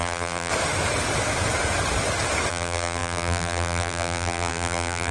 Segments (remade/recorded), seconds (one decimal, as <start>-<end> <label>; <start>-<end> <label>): 0.0-0.5 remade; 0.5-2.5 recorded; 2.5-5.1 remade

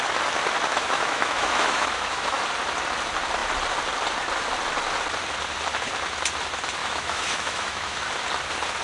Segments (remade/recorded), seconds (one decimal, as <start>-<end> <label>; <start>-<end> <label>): 0.0-0.7 recorded; 0.7-2.4 remade; 2.4-6.8 recorded; 6.8-8.1 remade; 8.1-8.8 recorded